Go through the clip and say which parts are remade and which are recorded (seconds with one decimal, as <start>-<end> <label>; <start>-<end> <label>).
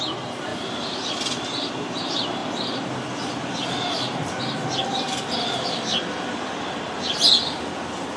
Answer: 0.0-0.5 recorded; 0.5-1.7 remade; 1.7-5.9 recorded; 5.9-6.8 remade; 6.8-8.2 recorded